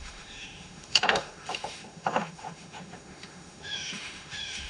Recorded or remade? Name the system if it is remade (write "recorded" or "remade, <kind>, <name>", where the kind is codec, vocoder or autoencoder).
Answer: remade, autoencoder, DAC-VAE